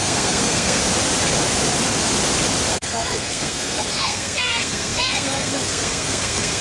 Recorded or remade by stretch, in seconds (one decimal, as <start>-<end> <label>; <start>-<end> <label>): 0.0-0.8 remade; 0.8-2.7 recorded; 2.7-6.6 remade